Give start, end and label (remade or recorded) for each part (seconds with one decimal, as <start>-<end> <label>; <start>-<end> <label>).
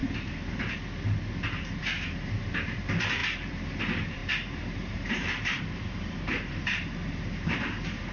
0.0-1.8 recorded; 1.8-8.1 remade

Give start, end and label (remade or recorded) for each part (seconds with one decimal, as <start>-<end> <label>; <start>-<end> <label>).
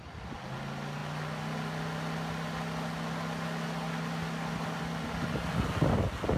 0.0-6.4 recorded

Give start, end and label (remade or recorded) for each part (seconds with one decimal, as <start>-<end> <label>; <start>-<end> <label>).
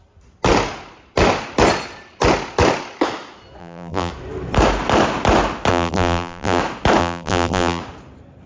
0.0-3.6 recorded; 3.6-4.1 remade; 4.1-5.7 recorded; 5.7-6.6 remade; 6.6-7.0 recorded; 7.0-7.8 remade; 7.8-8.5 recorded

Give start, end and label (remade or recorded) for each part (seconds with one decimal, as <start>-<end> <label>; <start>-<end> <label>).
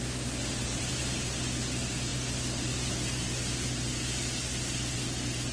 0.0-0.4 recorded; 0.4-0.9 remade; 0.9-5.5 recorded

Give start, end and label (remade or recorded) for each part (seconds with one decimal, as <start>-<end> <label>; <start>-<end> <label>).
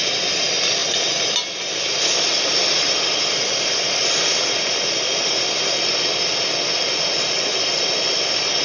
0.0-8.6 recorded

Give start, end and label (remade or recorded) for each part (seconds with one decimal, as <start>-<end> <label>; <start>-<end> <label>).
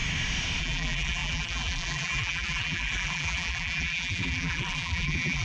0.0-0.6 recorded; 0.6-5.4 remade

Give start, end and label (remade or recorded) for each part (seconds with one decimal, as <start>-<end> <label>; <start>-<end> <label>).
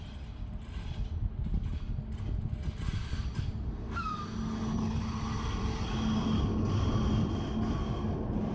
0.0-3.0 recorded; 3.0-4.2 remade; 4.2-8.5 recorded